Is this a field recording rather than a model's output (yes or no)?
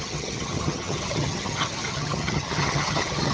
no